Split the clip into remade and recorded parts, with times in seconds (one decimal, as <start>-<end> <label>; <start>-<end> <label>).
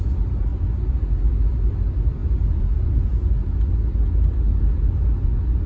0.0-2.2 recorded; 2.2-3.0 remade; 3.0-4.5 recorded; 4.5-5.7 remade